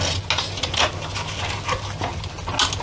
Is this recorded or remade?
recorded